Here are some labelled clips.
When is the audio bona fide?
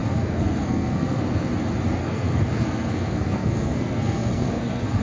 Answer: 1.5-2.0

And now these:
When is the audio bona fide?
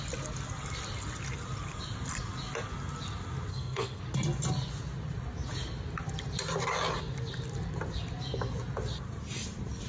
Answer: 0.0-3.5; 4.0-9.9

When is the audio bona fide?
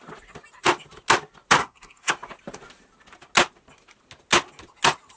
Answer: 0.0-1.6; 2.1-5.2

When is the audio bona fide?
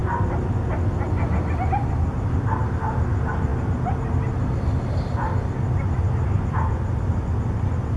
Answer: 0.0-8.0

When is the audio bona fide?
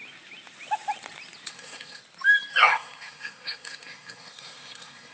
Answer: 0.0-1.5; 2.0-2.5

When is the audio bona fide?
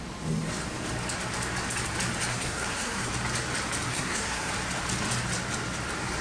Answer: 0.0-2.3; 3.1-3.9; 4.5-6.2